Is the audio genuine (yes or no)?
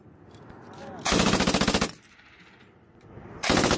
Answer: yes